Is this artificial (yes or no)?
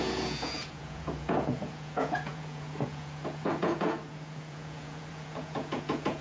yes